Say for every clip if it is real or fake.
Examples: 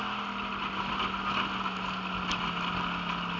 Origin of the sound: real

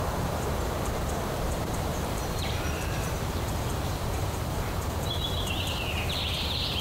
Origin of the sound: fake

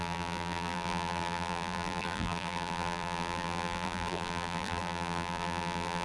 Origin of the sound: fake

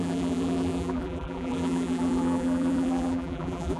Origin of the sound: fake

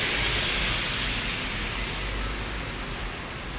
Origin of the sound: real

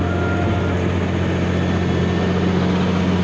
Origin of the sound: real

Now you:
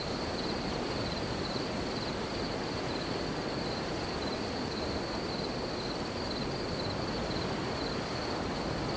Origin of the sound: fake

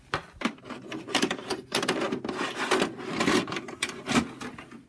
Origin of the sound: real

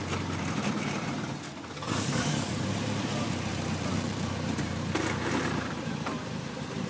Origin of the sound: fake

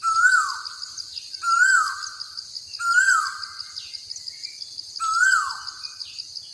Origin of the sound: real